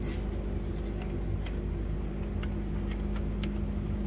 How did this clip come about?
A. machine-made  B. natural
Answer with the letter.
B